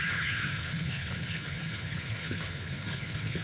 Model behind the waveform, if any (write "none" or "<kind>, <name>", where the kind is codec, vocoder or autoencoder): codec, HILCodec